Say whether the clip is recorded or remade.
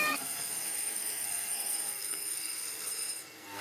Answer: remade